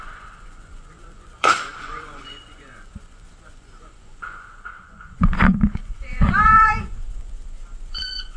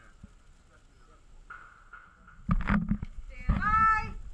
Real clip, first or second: second